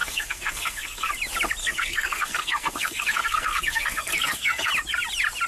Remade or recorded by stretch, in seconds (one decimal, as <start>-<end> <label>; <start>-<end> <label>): 0.0-1.1 remade; 1.1-1.6 recorded; 1.6-4.7 remade; 4.7-5.5 recorded